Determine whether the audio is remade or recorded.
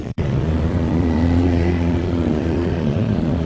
remade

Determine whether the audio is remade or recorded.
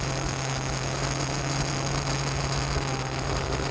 recorded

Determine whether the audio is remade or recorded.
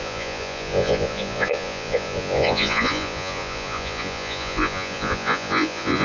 remade